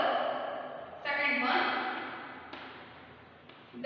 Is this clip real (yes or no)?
yes